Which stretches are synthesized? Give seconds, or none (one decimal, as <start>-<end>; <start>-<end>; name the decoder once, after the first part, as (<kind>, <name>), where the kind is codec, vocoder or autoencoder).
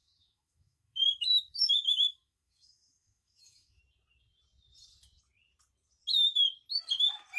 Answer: 0.0-3.8 (autoencoder, DAC-VAE)